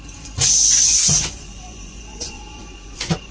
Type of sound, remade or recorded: remade